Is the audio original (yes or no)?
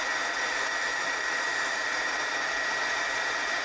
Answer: yes